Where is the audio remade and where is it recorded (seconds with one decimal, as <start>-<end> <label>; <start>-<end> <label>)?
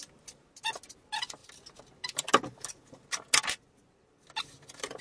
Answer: 0.0-5.0 recorded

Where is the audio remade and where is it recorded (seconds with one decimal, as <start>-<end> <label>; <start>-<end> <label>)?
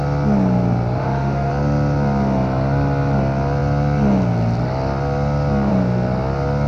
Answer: 0.0-1.0 recorded; 1.0-1.5 remade; 1.5-6.7 recorded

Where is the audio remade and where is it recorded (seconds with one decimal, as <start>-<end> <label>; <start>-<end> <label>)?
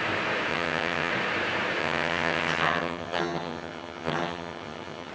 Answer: 0.0-0.5 recorded; 0.5-1.1 remade; 1.1-1.8 recorded; 1.8-5.1 remade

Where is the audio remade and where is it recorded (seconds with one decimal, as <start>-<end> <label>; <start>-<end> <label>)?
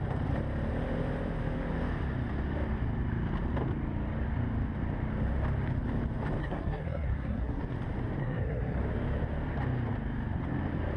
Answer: 0.0-6.4 recorded; 6.4-7.6 remade; 7.6-8.2 recorded; 8.2-8.8 remade; 8.8-11.0 recorded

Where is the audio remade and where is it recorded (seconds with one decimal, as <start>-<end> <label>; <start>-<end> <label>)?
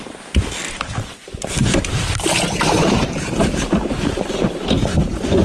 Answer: 0.0-5.4 recorded